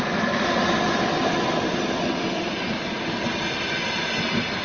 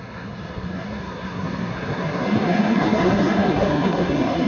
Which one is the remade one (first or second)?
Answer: second